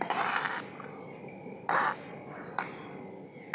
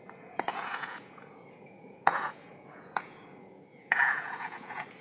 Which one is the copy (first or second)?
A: second